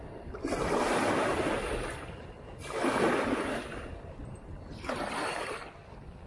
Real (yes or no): yes